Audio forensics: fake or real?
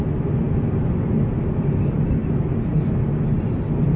real